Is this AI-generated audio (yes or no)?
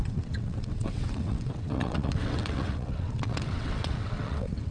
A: yes